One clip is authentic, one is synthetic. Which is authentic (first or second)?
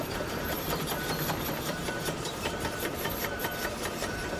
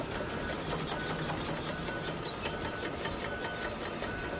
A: second